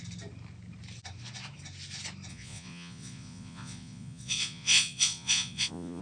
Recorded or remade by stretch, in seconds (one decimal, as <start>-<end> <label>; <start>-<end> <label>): 0.0-2.3 recorded; 2.3-6.0 remade